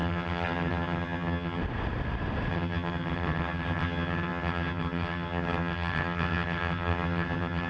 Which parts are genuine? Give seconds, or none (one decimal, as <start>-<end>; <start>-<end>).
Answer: 1.6-2.5